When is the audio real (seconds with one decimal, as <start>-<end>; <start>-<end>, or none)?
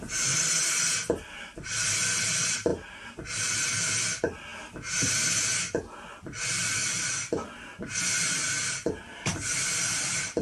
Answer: 0.0-10.4